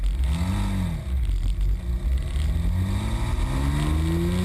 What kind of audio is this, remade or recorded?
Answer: recorded